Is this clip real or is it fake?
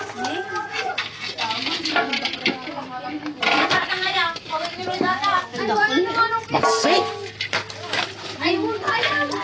real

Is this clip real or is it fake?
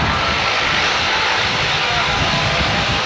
real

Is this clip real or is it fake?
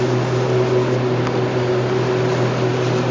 real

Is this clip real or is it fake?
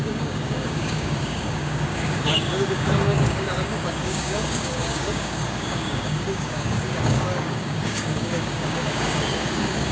fake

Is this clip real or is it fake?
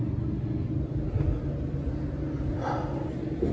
real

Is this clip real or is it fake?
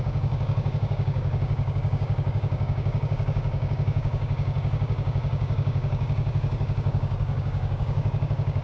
fake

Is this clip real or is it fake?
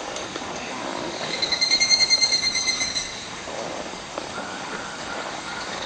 fake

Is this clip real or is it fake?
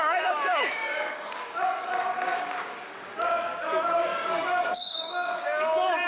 fake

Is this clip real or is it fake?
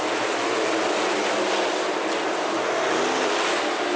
real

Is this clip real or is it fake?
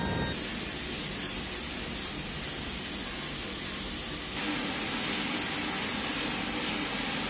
real